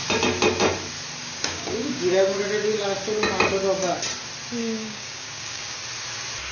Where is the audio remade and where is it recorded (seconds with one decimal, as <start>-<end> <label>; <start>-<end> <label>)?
0.0-1.2 recorded; 1.2-2.4 remade; 2.4-4.6 recorded; 4.6-5.8 remade; 5.8-6.5 recorded